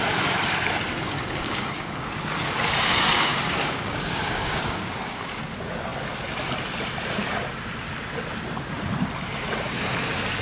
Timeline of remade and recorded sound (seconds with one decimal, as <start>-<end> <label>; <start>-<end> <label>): 0.0-0.9 recorded; 0.9-5.4 remade; 5.4-10.4 recorded